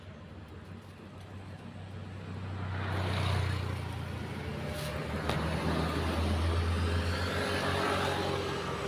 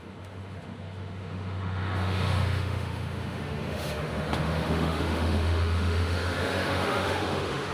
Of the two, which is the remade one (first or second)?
second